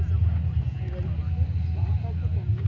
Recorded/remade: recorded